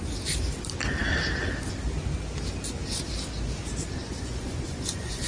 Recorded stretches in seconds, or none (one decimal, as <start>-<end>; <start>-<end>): 0.0-4.0